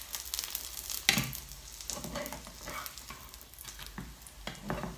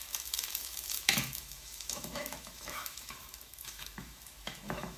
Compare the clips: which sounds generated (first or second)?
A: second